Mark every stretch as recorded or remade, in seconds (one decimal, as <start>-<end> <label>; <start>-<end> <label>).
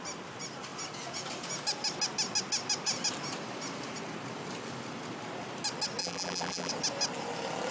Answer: 0.0-6.0 recorded; 6.0-6.7 remade; 6.7-7.7 recorded